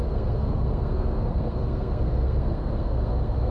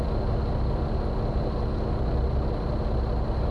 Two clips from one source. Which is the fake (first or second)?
first